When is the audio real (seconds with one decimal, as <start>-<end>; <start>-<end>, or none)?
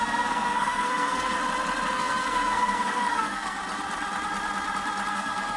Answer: 1.4-1.9; 3.6-5.1